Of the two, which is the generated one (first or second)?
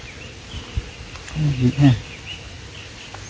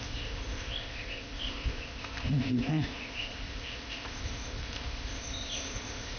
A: second